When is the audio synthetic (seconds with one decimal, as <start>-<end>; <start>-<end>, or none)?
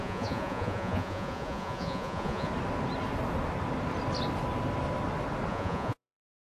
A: 0.0-2.5; 5.5-6.5